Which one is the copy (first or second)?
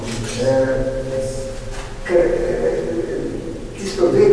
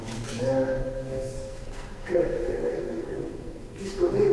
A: second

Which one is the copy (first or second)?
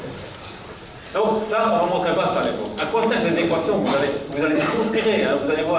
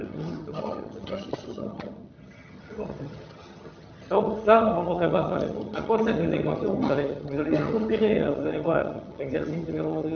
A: second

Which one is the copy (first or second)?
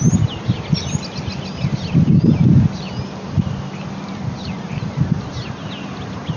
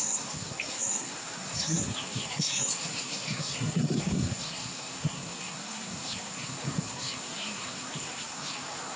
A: second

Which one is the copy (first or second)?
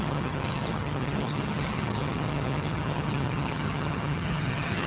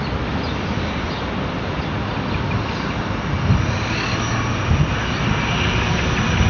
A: first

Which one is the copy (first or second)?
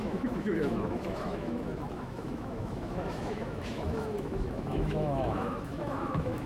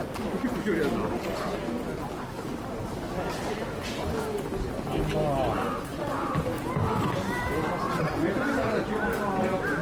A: first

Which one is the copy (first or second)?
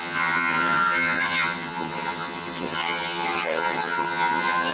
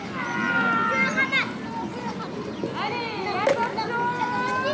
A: first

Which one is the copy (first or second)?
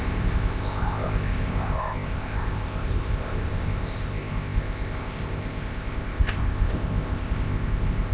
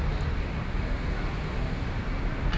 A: first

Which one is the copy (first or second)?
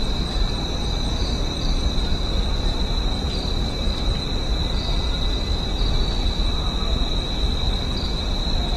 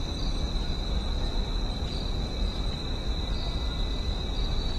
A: first